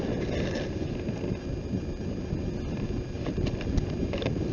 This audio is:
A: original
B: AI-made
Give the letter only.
A